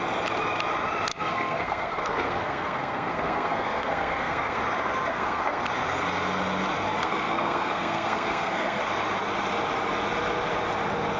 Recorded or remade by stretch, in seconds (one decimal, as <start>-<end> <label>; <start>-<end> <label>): 0.0-1.1 recorded; 1.1-4.6 remade; 4.6-5.1 recorded; 5.1-5.6 remade; 5.6-7.0 recorded; 7.0-8.8 remade; 8.8-11.2 recorded